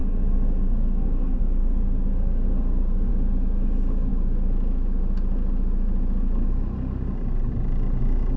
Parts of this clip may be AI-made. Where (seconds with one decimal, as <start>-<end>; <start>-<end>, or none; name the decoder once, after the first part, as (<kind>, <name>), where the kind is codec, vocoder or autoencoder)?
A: 0.0-3.1 (codec, SNAC)